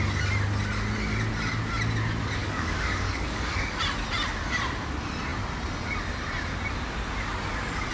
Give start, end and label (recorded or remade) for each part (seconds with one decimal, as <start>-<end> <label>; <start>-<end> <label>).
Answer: 0.0-2.4 recorded; 2.4-3.8 remade; 3.8-7.9 recorded